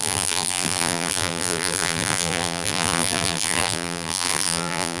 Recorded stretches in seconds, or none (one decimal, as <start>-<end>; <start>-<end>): none